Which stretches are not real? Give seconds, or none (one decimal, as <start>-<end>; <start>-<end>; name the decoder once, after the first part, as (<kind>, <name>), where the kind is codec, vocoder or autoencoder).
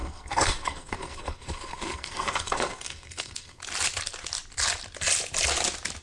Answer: 0.0-3.6 (codec, SNAC)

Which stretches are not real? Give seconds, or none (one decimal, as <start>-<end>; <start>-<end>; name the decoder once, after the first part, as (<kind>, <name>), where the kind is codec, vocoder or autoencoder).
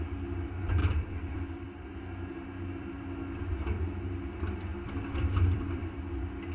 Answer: 0.8-3.0 (vocoder, BigVGAN v2); 4.7-6.0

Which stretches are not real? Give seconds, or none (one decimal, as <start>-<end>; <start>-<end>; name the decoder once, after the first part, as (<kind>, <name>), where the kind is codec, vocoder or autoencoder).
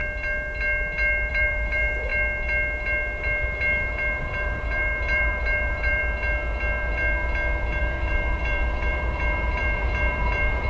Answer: 1.3-2.1 (vocoder, BigVGAN v2); 4.2-6.0; 7.8-10.7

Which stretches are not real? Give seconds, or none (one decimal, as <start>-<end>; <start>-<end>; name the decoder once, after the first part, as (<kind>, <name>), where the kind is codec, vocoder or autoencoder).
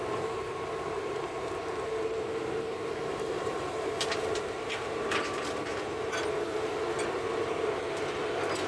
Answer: 0.0-5.7 (vocoder, BigVGAN v2)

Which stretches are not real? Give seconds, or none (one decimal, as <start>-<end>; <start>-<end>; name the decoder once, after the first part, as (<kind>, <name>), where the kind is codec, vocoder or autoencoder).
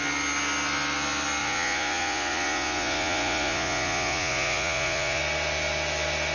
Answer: 1.4-5.2 (vocoder, Vocos)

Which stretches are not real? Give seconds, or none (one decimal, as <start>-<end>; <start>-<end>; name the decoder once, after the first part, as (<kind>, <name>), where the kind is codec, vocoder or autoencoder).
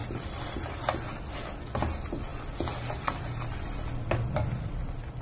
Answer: 0.0-1.1 (vocoder, BigVGAN v2)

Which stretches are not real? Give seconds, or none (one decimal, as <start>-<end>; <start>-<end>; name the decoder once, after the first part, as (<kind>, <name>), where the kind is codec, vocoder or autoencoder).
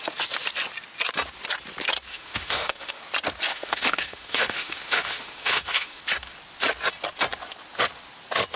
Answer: 2.1-3.0 (autoencoder, DAC-VAE); 3.5-6.0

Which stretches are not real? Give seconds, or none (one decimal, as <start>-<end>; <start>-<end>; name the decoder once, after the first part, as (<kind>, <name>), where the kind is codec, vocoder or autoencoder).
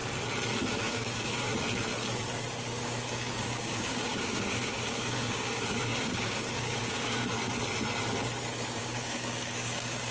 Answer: 0.8-1.5 (codec, DAC); 2.5-7.3; 8.8-10.1